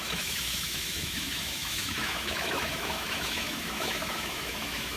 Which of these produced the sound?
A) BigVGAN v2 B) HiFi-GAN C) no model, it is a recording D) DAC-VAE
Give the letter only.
D